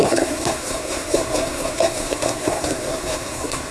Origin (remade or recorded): remade